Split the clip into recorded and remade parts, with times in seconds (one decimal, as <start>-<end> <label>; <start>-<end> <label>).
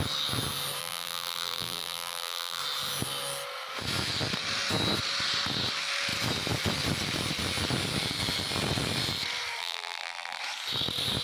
0.0-0.8 recorded; 0.8-2.6 remade; 2.6-9.6 recorded; 9.6-10.4 remade; 10.4-11.2 recorded